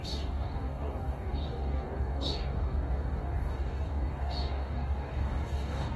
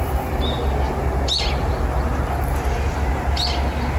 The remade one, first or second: first